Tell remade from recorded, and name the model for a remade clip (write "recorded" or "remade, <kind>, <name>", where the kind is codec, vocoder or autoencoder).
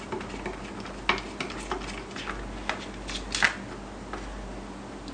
recorded